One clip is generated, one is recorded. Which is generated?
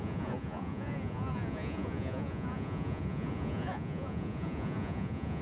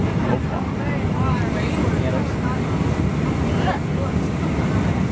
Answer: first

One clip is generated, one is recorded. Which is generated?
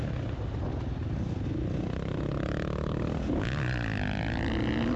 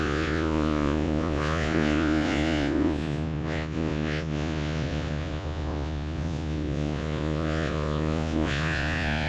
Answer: second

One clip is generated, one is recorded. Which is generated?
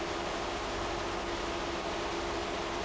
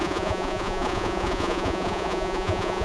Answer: second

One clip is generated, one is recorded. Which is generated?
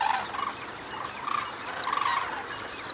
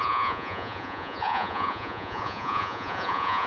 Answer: second